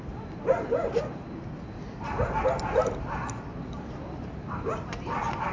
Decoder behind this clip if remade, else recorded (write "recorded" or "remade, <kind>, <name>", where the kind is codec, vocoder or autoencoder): recorded